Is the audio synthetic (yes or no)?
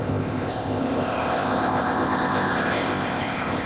yes